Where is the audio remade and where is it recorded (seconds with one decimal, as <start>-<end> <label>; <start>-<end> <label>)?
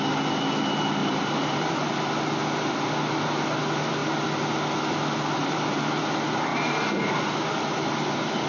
0.0-1.0 recorded; 1.0-1.9 remade; 1.9-5.4 recorded; 5.4-5.9 remade; 5.9-6.5 recorded; 6.5-8.5 remade